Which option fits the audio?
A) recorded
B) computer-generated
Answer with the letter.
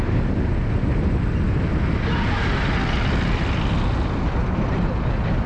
A